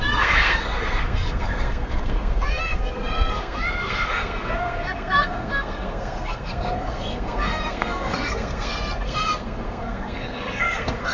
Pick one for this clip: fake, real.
fake